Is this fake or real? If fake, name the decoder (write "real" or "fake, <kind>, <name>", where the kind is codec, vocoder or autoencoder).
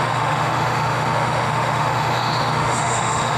fake, autoencoder, DAC-VAE